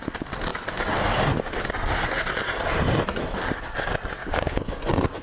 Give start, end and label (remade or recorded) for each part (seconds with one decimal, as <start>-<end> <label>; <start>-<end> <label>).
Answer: 0.0-4.2 recorded; 4.2-4.8 remade; 4.8-5.2 recorded